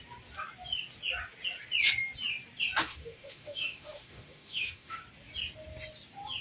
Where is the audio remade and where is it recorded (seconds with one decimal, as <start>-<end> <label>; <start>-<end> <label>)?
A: 0.0-2.8 recorded; 2.8-5.0 remade; 5.0-6.4 recorded